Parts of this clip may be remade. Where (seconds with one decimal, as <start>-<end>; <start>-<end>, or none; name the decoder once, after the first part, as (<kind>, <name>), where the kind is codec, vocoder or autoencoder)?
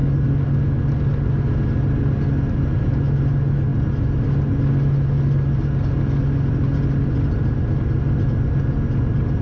none